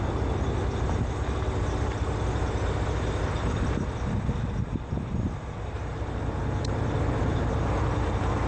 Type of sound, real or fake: real